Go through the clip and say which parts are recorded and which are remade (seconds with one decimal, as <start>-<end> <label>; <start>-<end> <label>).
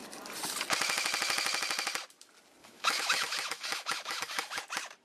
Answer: 0.0-2.6 recorded; 2.6-4.6 remade; 4.6-5.0 recorded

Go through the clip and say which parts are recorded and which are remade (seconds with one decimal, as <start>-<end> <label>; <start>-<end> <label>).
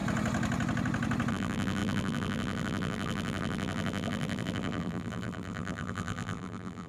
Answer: 0.0-1.3 recorded; 1.3-6.9 remade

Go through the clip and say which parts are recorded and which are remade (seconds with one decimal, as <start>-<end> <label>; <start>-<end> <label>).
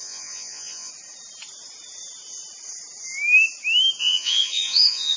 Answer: 0.0-0.9 remade; 0.9-4.0 recorded; 4.0-5.2 remade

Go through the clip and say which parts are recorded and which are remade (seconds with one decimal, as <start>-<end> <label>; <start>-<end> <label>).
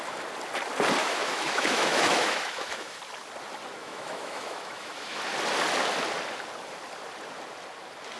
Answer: 0.0-1.0 recorded; 1.0-3.0 remade; 3.0-3.8 recorded; 3.8-5.2 remade; 5.2-8.2 recorded